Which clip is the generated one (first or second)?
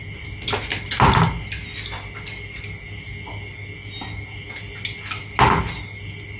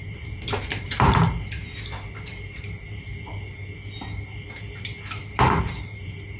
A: second